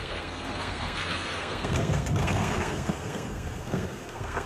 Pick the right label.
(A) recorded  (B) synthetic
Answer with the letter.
B